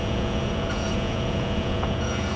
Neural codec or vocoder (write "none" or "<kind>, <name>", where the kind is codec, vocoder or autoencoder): vocoder, Vocos